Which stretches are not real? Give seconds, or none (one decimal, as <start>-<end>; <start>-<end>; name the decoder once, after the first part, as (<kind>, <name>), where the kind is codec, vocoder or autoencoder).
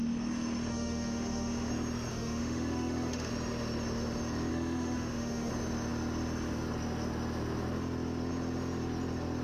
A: 0.7-1.7 (autoencoder, DAC-VAE); 2.1-3.3; 4.5-5.5